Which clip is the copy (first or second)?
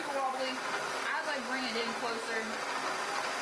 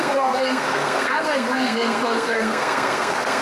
second